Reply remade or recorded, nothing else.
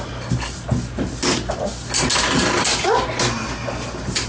recorded